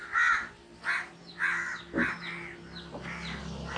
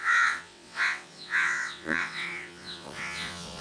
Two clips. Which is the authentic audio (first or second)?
first